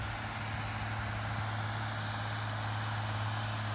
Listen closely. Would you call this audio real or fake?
real